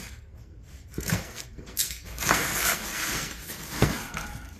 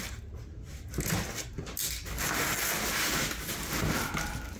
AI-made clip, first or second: first